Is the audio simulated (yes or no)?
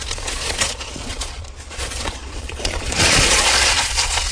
yes